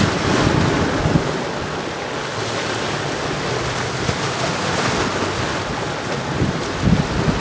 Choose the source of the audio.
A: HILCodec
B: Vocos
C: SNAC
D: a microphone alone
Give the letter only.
D